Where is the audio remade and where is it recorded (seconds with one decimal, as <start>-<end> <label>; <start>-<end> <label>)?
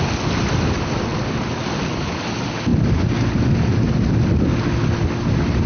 0.0-5.7 recorded